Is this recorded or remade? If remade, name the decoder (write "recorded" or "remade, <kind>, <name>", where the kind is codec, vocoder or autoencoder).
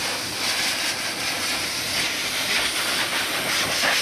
recorded